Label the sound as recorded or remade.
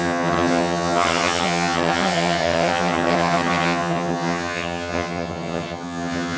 remade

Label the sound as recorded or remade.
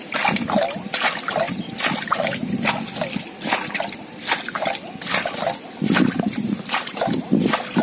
recorded